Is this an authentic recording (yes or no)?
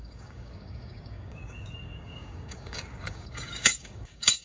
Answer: no